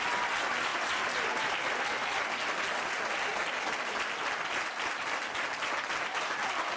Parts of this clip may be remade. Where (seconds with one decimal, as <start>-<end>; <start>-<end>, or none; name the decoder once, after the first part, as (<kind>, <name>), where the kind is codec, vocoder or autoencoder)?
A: 0.7-1.8 (vocoder, BigVGAN v2)